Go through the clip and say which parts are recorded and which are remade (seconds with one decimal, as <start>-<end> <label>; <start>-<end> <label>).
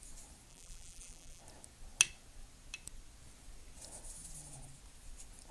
0.0-0.5 recorded; 0.5-1.4 remade; 1.4-5.5 recorded